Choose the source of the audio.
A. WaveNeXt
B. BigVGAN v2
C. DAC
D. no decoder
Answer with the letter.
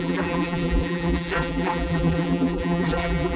B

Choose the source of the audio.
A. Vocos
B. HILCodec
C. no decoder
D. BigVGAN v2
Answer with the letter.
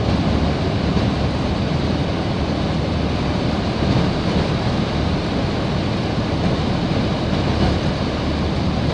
D